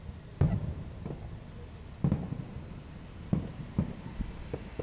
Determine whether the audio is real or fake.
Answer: real